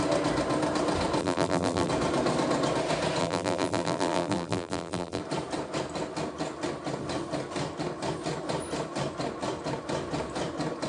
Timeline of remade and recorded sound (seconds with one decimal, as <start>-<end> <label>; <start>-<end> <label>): 0.0-1.2 recorded; 1.2-1.9 remade; 1.9-3.2 recorded; 3.2-5.2 remade; 5.2-10.9 recorded

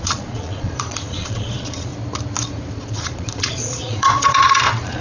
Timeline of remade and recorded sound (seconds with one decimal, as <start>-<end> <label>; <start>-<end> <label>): 0.0-1.9 remade; 1.9-2.7 recorded; 2.7-5.0 remade

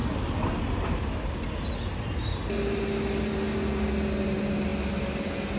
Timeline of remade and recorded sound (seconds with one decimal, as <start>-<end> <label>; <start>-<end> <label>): 0.0-5.6 recorded